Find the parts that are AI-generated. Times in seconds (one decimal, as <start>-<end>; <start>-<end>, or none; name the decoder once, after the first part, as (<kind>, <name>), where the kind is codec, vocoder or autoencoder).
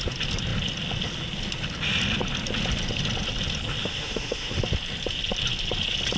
3.8-4.6 (autoencoder, DAC-VAE)